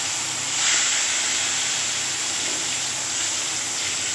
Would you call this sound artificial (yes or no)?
no